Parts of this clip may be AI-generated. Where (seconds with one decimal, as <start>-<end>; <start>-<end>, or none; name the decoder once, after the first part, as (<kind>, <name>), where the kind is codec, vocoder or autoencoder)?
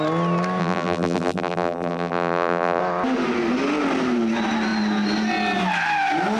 0.6-2.8 (vocoder, BigVGAN v2)